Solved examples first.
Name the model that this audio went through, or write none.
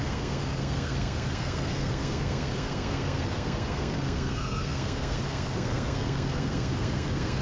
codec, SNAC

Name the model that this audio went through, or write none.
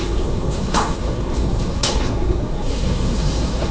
codec, SNAC